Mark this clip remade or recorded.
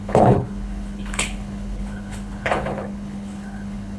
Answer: remade